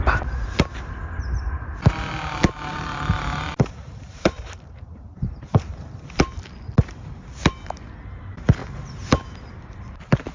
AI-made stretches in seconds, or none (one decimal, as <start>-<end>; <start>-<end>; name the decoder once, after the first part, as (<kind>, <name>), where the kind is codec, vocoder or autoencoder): 2.7-6.0 (vocoder, BigVGAN v2)